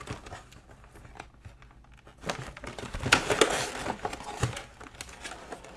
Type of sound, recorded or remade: recorded